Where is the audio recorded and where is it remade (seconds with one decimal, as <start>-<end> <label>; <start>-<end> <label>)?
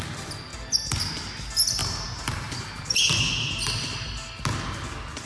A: 0.0-0.5 recorded; 0.5-1.1 remade; 1.1-1.8 recorded; 1.8-3.0 remade; 3.0-5.3 recorded